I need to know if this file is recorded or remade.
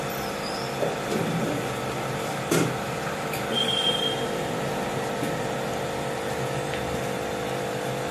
remade